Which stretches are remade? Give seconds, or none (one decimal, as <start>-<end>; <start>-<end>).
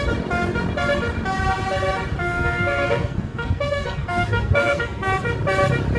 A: 2.2-5.1